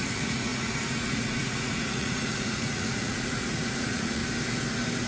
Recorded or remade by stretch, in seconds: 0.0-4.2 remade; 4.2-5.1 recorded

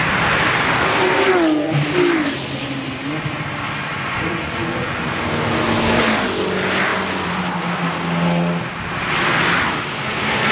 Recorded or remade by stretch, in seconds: 0.0-3.9 recorded; 3.9-5.2 remade; 5.2-10.5 recorded